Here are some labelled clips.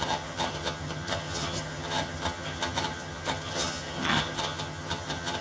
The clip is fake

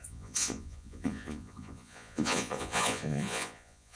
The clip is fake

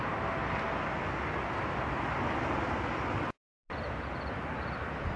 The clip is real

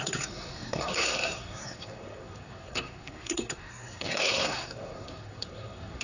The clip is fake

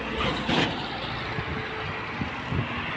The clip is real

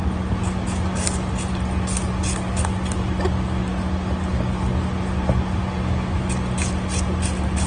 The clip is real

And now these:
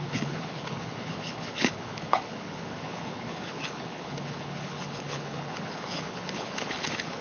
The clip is fake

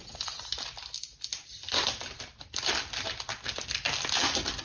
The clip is real